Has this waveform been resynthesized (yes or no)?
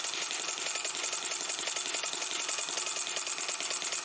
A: no